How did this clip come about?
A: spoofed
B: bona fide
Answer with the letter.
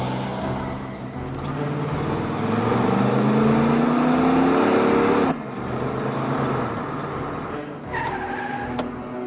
B